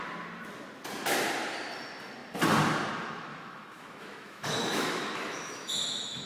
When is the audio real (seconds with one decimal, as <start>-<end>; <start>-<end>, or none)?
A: 0.0-3.3